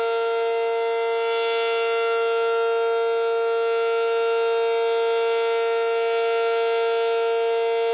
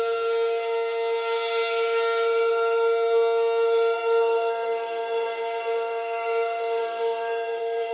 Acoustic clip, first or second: first